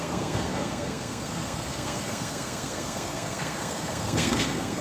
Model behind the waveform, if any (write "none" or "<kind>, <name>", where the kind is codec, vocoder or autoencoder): codec, SNAC